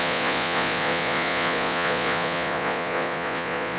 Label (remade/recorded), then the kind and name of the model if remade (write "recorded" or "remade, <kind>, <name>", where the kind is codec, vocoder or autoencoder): remade, vocoder, Vocos